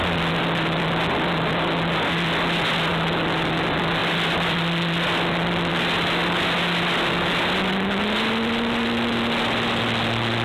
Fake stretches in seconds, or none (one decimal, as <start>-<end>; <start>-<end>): 2.9-3.5; 4.0-5.7